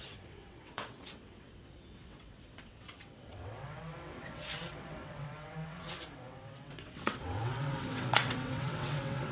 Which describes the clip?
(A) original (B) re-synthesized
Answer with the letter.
B